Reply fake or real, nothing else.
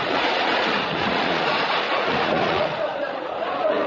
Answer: fake